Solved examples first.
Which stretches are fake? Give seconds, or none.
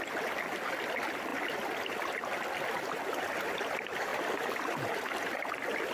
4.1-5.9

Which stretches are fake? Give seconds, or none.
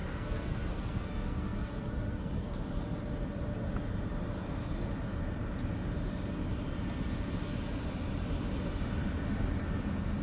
0.0-2.5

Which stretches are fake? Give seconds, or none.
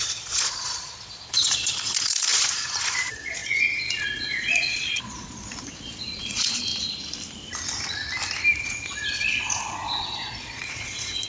0.0-6.7; 8.6-11.3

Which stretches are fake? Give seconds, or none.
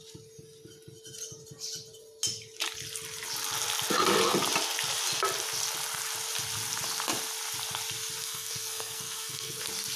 8.2-9.6